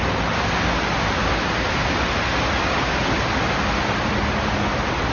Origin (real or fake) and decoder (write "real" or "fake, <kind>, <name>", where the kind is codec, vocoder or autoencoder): real